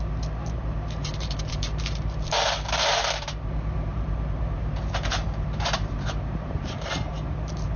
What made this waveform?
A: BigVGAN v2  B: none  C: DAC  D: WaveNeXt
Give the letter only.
A